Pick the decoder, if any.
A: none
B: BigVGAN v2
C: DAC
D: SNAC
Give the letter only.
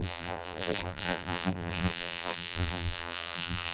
B